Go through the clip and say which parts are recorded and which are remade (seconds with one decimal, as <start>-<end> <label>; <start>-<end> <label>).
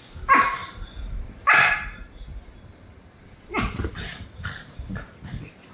0.0-5.7 recorded